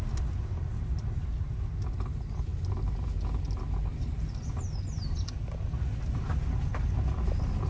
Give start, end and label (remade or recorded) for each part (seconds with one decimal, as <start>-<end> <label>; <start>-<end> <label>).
0.0-7.7 recorded